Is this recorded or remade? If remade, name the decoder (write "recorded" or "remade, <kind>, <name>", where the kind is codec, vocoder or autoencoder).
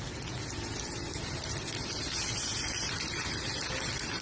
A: recorded